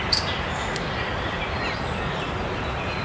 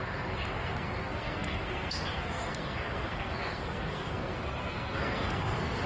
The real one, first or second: first